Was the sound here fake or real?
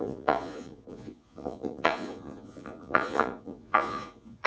fake